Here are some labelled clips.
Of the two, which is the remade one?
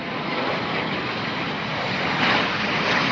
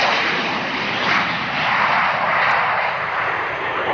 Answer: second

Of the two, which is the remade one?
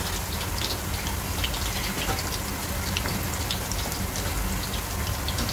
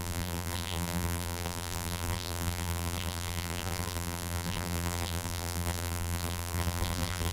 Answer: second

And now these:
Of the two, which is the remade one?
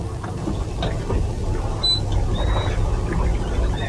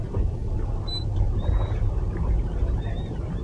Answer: second